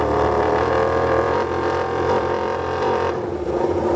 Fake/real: fake